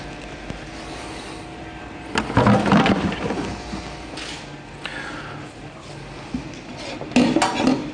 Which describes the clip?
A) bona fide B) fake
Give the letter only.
A